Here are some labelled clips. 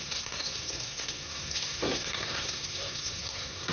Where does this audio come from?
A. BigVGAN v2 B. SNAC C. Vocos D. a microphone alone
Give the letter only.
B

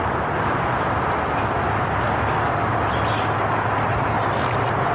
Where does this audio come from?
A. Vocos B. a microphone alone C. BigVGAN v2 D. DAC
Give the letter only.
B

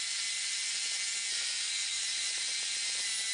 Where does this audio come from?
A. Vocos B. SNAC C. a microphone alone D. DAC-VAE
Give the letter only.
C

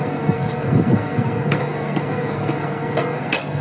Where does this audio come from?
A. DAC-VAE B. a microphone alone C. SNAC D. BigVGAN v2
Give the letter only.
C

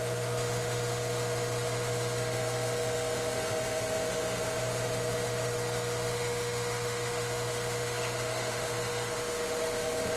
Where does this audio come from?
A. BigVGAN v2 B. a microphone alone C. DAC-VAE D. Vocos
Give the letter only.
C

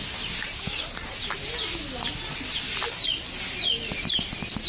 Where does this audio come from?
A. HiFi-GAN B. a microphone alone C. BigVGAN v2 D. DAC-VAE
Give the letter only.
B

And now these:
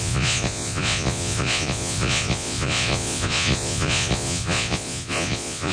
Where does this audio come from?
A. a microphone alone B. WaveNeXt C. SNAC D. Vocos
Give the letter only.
D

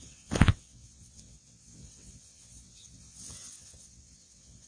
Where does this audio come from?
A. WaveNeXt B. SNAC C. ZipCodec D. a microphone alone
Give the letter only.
A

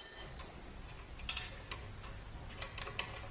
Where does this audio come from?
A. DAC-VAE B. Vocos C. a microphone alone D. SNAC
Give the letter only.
C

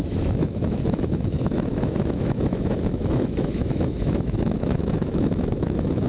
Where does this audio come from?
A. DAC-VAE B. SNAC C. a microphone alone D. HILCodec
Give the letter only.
A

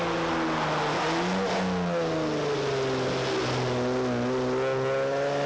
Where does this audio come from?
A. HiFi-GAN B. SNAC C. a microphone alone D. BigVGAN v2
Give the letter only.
C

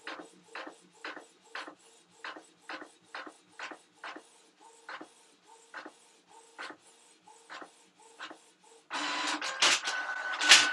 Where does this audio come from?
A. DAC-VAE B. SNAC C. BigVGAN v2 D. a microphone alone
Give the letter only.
D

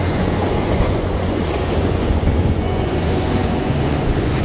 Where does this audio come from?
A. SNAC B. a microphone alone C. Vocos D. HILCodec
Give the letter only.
C